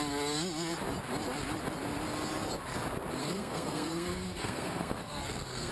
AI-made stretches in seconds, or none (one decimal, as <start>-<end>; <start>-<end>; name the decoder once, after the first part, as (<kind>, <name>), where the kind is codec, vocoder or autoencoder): 3.2-5.7 (codec, SNAC)